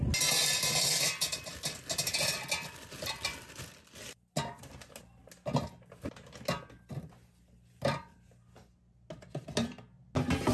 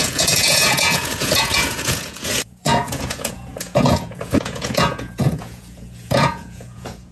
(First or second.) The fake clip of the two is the second